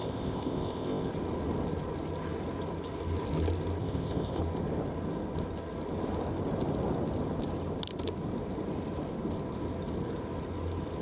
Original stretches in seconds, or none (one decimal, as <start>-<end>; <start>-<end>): 1.1-3.8; 4.4-11.0